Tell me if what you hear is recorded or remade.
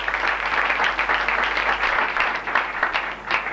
remade